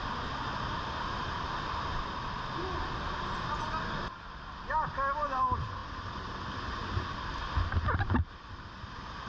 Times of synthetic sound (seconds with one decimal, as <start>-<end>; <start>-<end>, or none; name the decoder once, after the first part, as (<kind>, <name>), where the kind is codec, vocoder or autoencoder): none